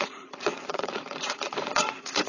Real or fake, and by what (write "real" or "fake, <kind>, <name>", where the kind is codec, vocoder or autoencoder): fake, vocoder, Vocos